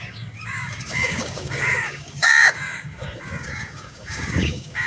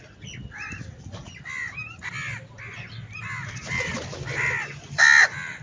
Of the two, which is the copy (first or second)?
first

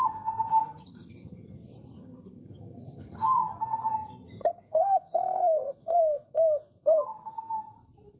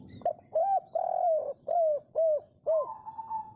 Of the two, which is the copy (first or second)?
first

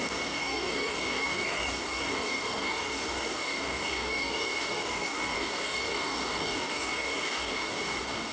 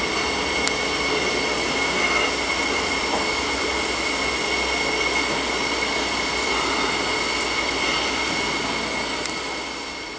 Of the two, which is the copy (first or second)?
first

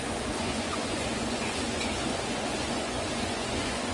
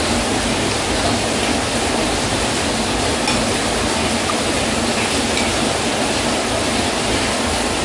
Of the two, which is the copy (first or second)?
first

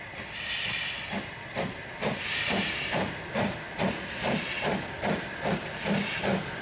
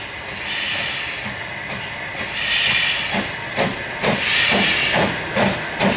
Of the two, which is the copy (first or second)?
first